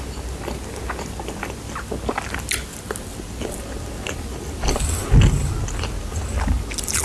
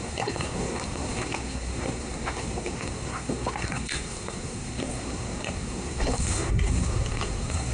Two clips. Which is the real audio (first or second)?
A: first